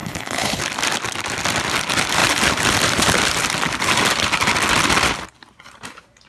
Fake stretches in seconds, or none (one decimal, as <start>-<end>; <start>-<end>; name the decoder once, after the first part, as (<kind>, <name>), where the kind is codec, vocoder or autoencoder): 0.0-0.6 (codec, HILCodec)